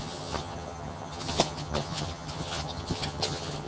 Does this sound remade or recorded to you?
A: remade